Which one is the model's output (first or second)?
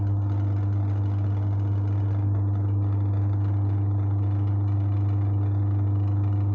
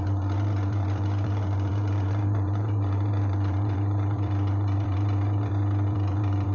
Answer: second